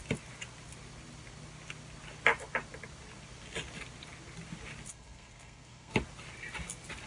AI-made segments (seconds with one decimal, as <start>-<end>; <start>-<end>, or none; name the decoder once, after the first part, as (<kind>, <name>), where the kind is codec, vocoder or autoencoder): 4.9-5.9 (codec, SNAC)

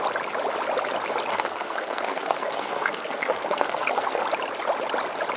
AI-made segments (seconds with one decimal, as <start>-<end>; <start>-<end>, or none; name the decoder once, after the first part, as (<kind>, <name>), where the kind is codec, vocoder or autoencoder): 1.3-4.2 (codec, SNAC)

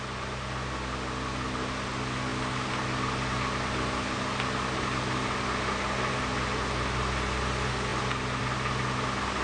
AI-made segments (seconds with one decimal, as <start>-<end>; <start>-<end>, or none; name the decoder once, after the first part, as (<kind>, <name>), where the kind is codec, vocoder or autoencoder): none